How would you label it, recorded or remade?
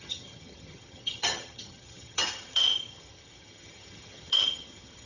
remade